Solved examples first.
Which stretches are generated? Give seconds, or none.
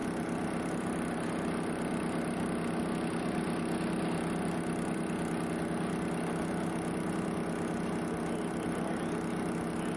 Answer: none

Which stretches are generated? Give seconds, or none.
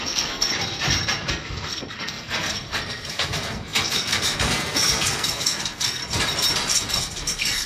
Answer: 0.0-0.5 (codec, SNAC); 1.3-6.0; 6.9-7.7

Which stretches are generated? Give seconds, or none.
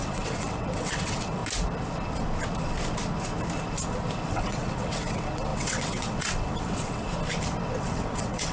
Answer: 0.0-1.4 (vocoder, WaveNeXt); 4.3-7.1; 7.7-8.5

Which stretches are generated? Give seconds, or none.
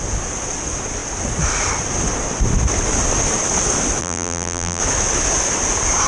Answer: 4.0-4.8 (vocoder, BigVGAN v2)